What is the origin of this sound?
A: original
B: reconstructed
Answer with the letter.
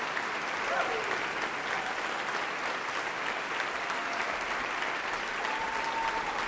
A